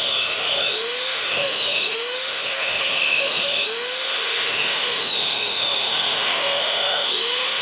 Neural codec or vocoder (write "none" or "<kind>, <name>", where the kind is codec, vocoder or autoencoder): autoencoder, DAC-VAE